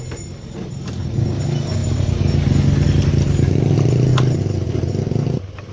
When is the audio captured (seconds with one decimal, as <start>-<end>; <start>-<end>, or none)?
0.0-5.7